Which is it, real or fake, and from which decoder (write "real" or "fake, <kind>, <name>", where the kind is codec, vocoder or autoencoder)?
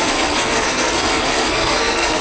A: fake, codec, SNAC